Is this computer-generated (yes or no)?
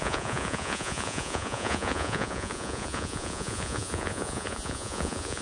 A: yes